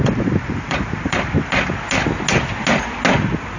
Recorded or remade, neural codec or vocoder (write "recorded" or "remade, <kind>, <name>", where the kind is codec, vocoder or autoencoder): recorded